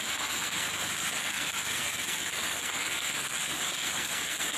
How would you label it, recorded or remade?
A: remade